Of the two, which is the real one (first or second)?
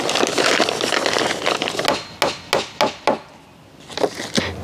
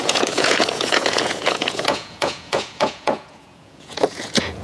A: first